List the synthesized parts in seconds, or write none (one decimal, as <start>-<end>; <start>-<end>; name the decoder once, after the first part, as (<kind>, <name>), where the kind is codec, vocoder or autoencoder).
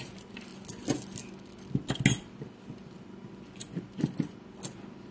none